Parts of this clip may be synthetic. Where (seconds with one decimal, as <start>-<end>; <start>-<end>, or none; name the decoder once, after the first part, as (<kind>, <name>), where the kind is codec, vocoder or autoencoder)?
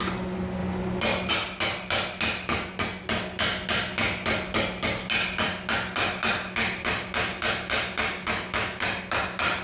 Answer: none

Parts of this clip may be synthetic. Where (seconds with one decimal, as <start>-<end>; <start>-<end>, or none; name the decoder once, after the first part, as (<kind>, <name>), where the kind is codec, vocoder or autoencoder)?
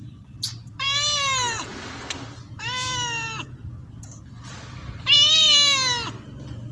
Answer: none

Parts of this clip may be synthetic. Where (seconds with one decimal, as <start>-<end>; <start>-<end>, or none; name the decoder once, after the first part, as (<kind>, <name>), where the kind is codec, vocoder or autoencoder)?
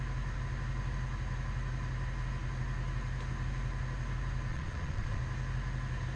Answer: 4.5-5.2 (vocoder, Vocos)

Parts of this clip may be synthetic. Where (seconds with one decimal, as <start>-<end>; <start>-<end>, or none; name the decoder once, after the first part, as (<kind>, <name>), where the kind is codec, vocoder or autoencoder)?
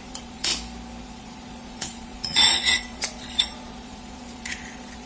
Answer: 0.0-0.5 (vocoder, Vocos); 1.0-5.1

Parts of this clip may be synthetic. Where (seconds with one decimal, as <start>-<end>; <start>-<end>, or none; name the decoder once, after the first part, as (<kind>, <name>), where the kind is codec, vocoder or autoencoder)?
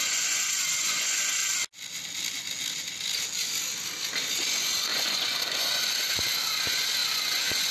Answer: 0.0-1.4 (vocoder, Vocos); 4.3-7.7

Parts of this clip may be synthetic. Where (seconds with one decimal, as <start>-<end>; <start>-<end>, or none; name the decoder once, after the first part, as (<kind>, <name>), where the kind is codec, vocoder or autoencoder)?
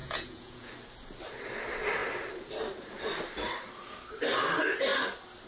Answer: 0.0-0.7 (vocoder, Vocos)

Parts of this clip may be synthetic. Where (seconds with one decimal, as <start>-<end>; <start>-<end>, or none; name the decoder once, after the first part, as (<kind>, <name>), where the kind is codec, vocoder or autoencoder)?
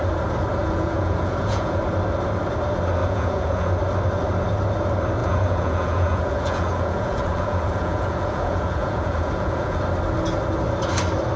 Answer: 0.6-1.8 (vocoder, Vocos); 3.0-3.7; 5.2-9.8